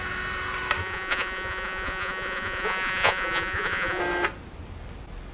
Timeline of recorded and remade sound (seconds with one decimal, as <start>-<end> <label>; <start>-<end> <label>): 0.0-0.8 recorded; 0.8-4.0 remade; 4.0-5.3 recorded